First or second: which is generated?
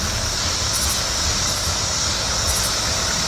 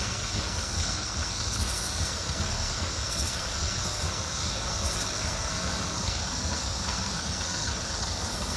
second